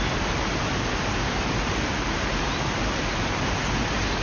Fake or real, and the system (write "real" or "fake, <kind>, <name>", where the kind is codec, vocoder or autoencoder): real